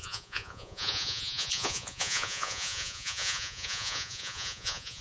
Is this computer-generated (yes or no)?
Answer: yes